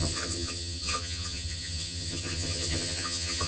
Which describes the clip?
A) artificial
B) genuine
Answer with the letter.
A